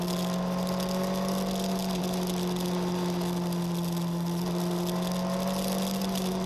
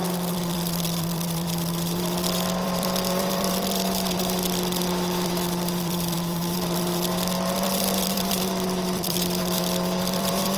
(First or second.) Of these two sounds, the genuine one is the first